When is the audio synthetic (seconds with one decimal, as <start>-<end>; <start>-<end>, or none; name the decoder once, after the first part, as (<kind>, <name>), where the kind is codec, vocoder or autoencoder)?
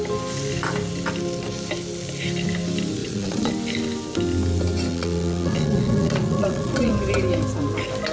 3.0-3.5 (vocoder, Vocos); 4.9-6.9